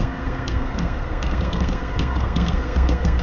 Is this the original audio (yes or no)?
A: no